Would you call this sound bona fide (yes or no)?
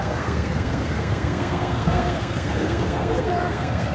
no